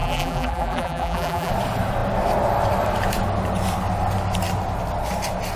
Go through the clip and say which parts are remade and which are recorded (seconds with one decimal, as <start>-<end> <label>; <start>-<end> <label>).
0.0-1.5 remade; 1.5-5.6 recorded